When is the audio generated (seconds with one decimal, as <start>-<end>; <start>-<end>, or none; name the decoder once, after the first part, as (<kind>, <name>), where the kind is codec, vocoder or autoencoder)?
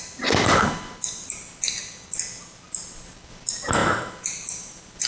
none